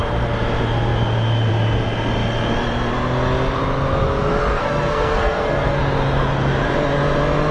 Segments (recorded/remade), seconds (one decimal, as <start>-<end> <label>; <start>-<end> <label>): 0.0-4.5 recorded; 4.5-5.8 remade; 5.8-7.5 recorded